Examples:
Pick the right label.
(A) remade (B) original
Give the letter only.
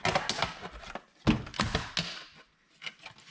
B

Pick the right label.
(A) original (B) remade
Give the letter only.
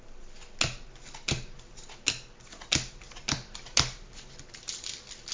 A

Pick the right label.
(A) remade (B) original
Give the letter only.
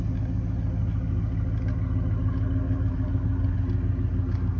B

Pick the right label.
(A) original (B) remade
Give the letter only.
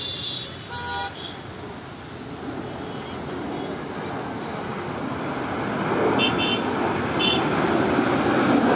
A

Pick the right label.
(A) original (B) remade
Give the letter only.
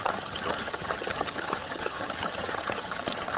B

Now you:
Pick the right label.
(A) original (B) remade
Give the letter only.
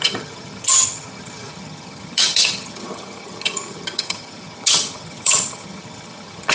B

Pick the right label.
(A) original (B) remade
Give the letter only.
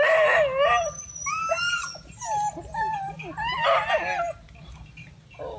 A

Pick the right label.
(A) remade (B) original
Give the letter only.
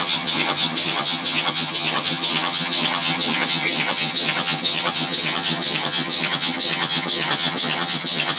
A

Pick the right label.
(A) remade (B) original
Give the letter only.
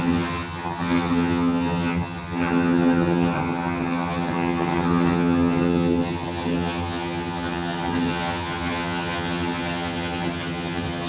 A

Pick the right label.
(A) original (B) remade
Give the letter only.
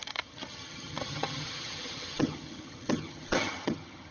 B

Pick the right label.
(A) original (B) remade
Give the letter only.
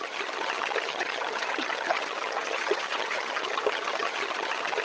B